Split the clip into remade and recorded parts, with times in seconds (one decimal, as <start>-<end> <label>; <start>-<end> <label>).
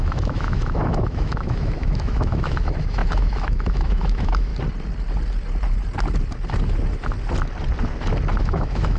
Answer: 0.0-4.5 remade; 4.5-8.4 recorded; 8.4-9.0 remade